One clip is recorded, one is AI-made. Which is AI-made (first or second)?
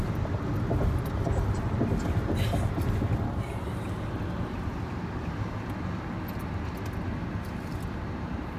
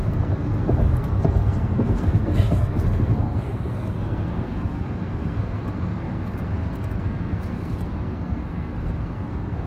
second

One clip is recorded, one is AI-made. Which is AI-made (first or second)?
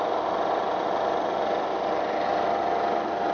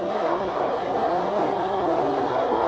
second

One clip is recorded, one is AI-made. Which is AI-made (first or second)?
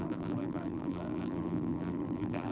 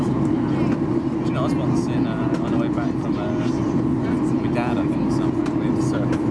first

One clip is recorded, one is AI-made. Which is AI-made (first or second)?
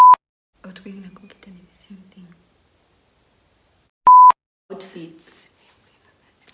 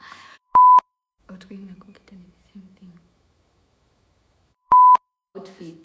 second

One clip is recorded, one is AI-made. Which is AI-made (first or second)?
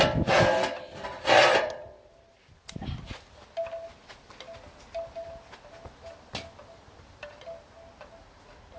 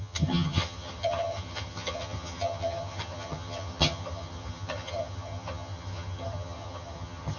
second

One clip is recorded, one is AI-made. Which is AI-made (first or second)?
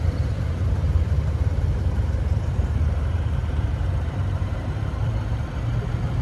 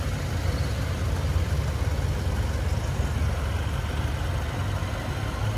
first